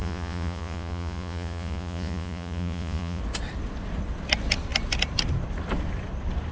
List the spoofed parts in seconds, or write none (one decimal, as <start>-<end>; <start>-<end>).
0.0-3.2